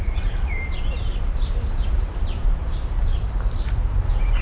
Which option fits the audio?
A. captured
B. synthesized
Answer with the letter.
B